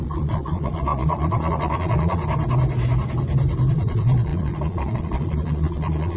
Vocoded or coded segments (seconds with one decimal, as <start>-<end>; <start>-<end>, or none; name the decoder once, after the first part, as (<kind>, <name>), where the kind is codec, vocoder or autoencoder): 0.0-2.2 (vocoder, Vocos); 3.7-6.2